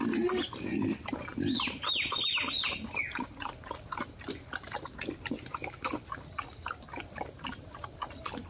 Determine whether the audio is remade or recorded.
recorded